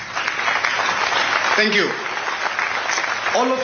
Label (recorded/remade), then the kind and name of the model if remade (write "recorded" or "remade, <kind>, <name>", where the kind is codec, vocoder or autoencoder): recorded